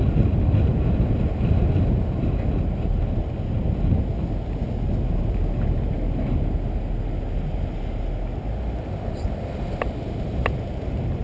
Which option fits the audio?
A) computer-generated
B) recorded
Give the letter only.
B